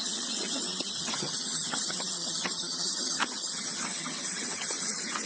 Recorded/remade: remade